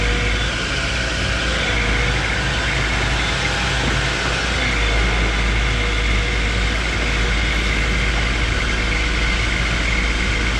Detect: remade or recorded recorded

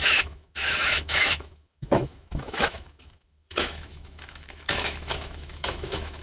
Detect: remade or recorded remade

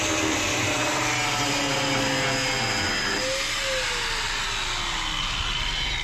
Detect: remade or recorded recorded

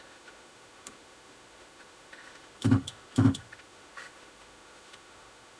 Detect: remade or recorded remade